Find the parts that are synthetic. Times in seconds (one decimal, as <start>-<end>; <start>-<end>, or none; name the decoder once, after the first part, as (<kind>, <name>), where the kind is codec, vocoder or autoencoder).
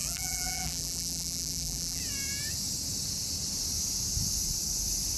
0.0-2.0 (vocoder, BigVGAN v2)